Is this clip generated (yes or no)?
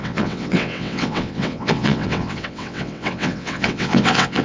yes